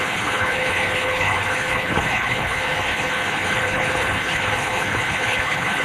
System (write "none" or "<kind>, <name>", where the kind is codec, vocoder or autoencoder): codec, HILCodec